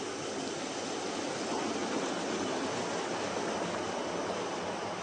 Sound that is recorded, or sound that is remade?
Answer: recorded